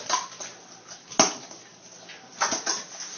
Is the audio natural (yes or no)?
yes